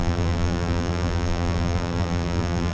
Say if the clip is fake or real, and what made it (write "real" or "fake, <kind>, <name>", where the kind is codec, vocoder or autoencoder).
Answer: fake, vocoder, BigVGAN v2